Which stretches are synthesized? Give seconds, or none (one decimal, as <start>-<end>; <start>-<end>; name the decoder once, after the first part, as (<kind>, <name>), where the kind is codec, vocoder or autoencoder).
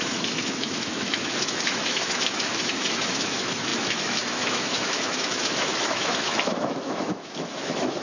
0.0-8.0 (autoencoder, DAC-VAE)